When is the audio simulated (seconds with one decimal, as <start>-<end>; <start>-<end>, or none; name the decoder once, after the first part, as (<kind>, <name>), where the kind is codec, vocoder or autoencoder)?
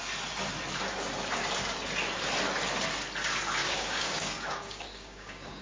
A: 3.6-5.6 (codec, DAC)